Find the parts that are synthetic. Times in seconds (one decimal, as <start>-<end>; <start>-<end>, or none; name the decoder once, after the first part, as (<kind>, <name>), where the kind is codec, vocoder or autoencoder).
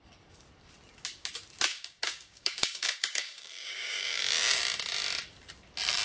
1.7-4.2 (codec, DAC)